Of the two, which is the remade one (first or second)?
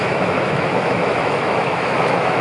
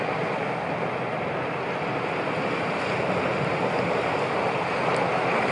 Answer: first